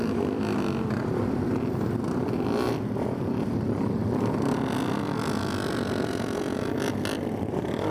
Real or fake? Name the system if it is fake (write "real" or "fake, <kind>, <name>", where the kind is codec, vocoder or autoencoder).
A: real